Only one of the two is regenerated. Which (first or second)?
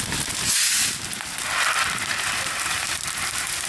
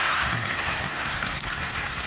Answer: second